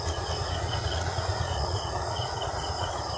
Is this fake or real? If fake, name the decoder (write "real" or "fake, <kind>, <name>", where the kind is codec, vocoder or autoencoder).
fake, vocoder, Vocos